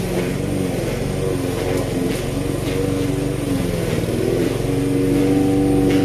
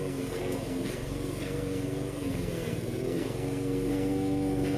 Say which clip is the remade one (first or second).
second